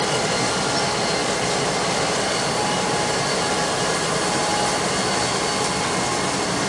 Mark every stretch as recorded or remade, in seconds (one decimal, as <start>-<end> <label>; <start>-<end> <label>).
0.0-6.7 recorded